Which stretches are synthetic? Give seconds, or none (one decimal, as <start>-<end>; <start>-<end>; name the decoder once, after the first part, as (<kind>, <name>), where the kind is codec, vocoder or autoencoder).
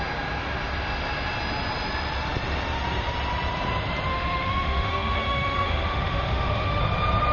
4.1-6.8 (autoencoder, DAC-VAE)